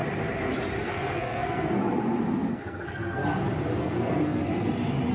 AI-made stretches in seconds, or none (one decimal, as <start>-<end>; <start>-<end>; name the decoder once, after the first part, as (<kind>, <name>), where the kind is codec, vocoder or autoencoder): 0.8-1.8 (codec, SNAC); 2.5-3.2; 3.8-4.4